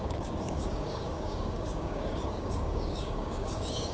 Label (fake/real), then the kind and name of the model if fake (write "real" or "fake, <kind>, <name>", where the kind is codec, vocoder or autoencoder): fake, codec, DAC